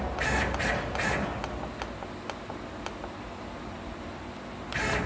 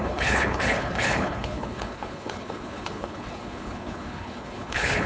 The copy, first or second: second